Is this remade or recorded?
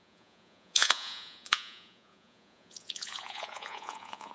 remade